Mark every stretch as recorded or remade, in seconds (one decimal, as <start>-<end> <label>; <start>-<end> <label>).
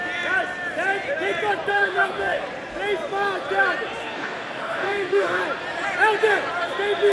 0.0-1.7 recorded; 1.7-2.4 remade; 2.4-4.0 recorded; 4.0-5.4 remade; 5.4-7.1 recorded